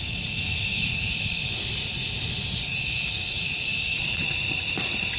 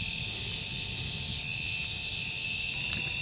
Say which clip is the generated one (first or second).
first